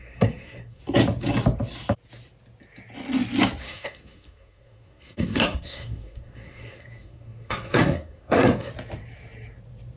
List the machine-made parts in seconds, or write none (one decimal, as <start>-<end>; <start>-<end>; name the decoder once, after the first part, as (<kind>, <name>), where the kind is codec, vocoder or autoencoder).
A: 0.0-0.8 (codec, SNAC); 3.6-8.7

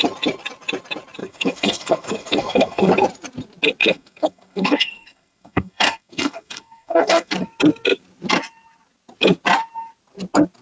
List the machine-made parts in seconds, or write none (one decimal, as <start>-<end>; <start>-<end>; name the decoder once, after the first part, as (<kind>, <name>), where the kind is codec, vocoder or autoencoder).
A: 1.2-2.9 (codec, SNAC); 3.8-7.3

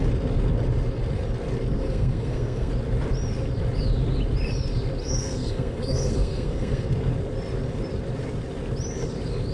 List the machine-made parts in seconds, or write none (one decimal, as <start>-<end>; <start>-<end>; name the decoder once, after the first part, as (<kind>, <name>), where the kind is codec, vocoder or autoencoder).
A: 1.8-2.7 (codec, SNAC); 5.0-6.9

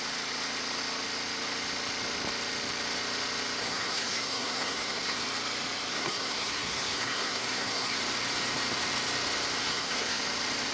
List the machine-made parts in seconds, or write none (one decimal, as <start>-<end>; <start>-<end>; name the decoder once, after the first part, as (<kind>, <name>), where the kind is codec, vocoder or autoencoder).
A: 3.6-5.2 (codec, SNAC); 5.9-8.0; 9.6-10.2

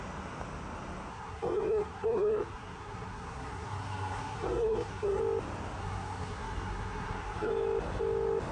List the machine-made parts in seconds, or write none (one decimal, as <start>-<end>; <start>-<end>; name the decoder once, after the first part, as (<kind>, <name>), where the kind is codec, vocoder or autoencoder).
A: 1.1-5.2 (codec, SNAC); 5.8-7.5

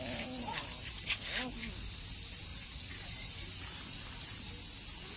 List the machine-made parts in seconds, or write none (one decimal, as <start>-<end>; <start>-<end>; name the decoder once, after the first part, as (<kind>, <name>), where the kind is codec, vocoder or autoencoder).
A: none

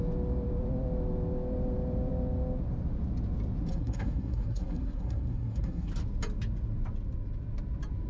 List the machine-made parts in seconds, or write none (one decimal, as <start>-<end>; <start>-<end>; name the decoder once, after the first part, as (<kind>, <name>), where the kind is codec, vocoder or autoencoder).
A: 3.7-5.9 (codec, SNAC)

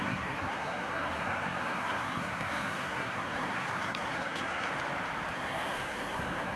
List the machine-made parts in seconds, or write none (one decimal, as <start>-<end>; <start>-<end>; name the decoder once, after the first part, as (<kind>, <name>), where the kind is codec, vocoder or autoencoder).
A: 0.0-4.7 (codec, SNAC); 5.3-6.6